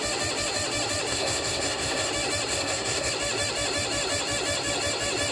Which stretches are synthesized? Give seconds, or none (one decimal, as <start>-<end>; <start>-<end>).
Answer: 1.1-2.1; 2.5-3.1